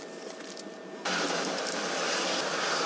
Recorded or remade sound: recorded